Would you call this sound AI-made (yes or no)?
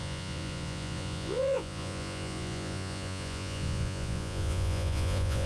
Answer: yes